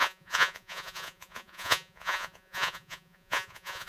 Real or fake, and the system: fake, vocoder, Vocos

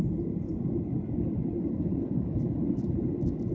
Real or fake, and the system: real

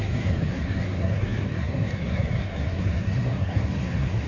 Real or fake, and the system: fake, codec, SNAC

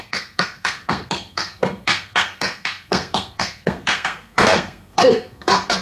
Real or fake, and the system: fake, codec, SNAC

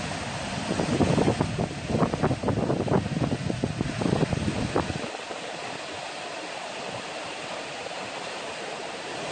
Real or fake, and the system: real